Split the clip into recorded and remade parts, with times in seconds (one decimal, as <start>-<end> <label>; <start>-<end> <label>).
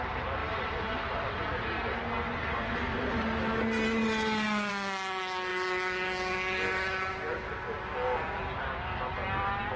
0.0-9.8 recorded